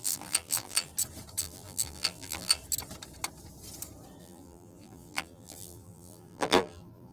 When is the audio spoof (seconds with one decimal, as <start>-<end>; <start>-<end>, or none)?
0.0-0.9; 1.4-2.6; 4.2-7.1